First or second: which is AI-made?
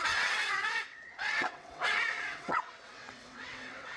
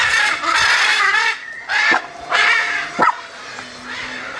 first